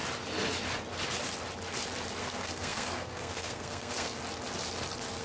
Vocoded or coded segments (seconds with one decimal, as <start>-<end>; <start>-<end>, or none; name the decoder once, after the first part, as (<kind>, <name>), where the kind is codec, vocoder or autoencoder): 2.2-4.2 (codec, SNAC)